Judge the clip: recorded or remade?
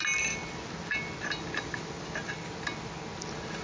recorded